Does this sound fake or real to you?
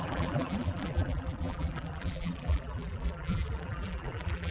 fake